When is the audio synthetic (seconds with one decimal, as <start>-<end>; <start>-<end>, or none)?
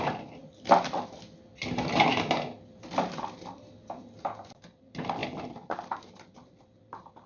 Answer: none